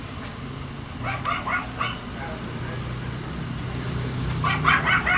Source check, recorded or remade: recorded